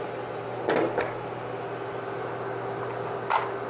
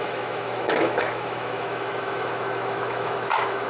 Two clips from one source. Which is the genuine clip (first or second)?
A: first